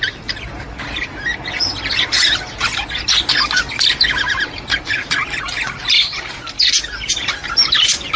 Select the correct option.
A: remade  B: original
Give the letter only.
B